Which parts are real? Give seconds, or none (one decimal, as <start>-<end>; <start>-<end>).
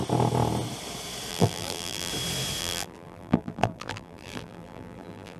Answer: 0.0-1.3; 2.1-2.6